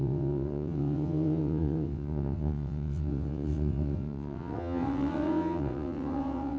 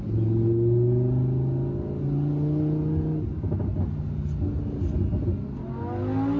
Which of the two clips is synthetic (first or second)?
first